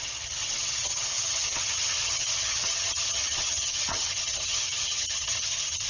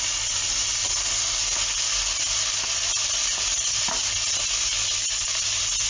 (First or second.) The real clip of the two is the second